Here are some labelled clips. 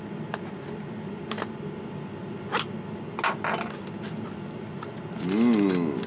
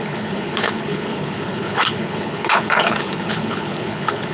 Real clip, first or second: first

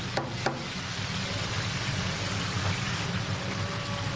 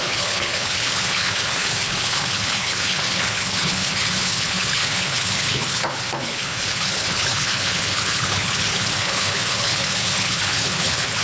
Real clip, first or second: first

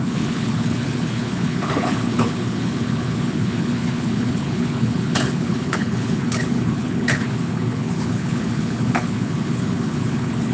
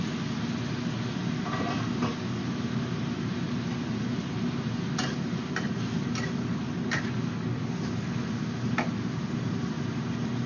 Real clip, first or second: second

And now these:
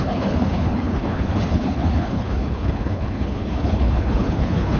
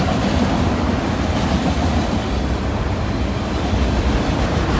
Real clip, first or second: second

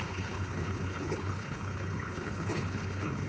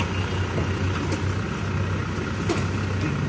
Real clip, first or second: second